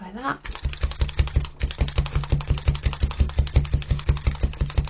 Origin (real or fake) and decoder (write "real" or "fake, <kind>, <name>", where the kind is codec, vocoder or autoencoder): real